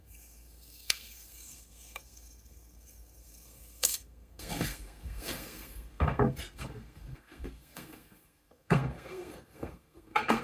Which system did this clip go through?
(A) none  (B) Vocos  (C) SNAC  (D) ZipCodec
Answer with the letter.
C